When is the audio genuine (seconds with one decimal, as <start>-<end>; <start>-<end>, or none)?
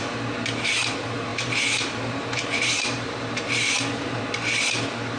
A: 0.0-1.3; 4.2-5.2